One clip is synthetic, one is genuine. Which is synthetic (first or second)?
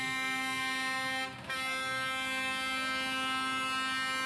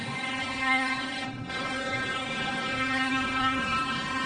second